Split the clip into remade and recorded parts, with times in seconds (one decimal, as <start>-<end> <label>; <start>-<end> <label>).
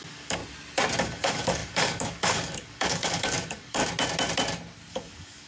0.0-0.4 remade; 0.4-1.0 recorded; 1.0-3.8 remade; 3.8-4.9 recorded; 4.9-5.5 remade